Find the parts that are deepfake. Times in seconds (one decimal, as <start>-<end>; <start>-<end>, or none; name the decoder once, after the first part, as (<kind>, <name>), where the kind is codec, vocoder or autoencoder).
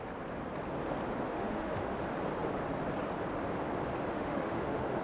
1.3-2.0 (autoencoder, DAC-VAE); 4.1-5.0